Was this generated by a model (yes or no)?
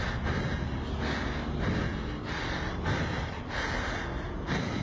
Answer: no